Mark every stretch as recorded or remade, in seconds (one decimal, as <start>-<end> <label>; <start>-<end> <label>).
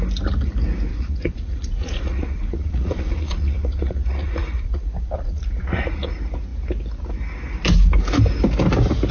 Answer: 0.0-0.9 recorded; 0.9-6.1 remade; 6.1-9.1 recorded